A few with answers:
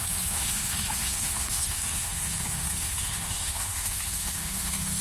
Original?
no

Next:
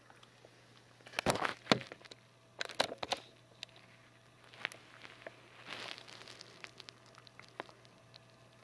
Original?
yes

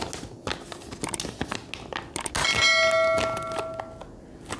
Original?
yes